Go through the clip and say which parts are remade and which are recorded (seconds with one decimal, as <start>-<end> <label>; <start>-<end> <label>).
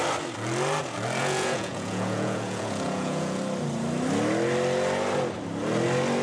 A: 0.0-1.2 recorded; 1.2-3.4 remade; 3.4-6.2 recorded